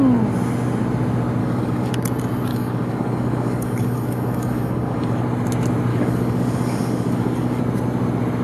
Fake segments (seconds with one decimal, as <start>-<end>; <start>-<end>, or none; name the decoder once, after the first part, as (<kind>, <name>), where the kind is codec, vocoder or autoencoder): 1.4-1.9 (codec, DAC); 2.5-5.2; 5.9-7.6